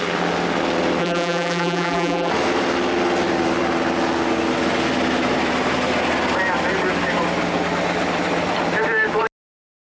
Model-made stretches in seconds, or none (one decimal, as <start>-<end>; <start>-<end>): 1.0-2.3